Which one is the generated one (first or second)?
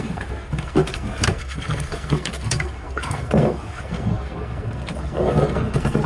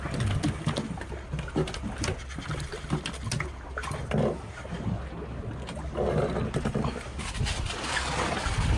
first